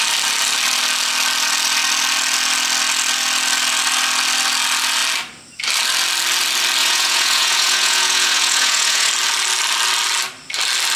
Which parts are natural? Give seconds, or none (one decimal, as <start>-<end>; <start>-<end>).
0.0-6.8; 9.1-11.0